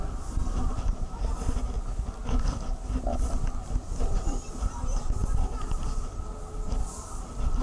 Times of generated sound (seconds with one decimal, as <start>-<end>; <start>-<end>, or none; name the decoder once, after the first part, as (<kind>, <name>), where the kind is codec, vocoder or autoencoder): none